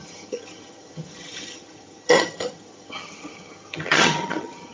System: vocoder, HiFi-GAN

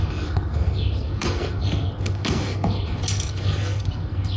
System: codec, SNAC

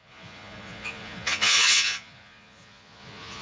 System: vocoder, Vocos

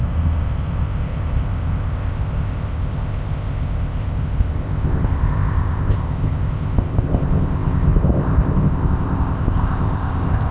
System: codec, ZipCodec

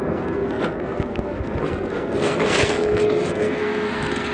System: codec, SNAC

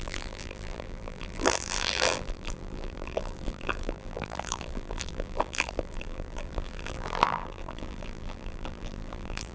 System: vocoder, BigVGAN v2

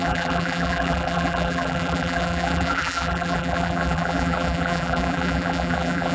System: vocoder, BigVGAN v2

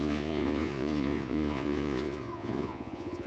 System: vocoder, Vocos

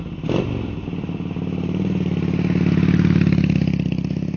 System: none